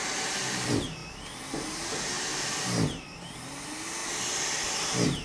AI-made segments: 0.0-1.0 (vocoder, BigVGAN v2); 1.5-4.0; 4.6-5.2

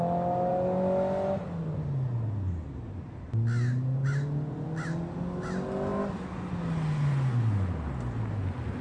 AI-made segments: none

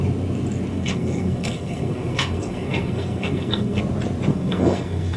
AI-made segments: 0.7-3.8 (codec, SNAC); 4.3-5.2

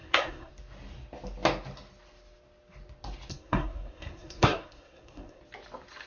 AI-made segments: 0.0-0.5 (codec, SNAC); 3.3-5.4

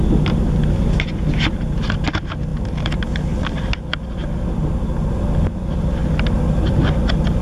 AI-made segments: none

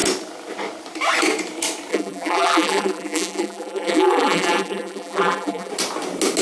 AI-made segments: 1.9-5.7 (vocoder, BigVGAN v2)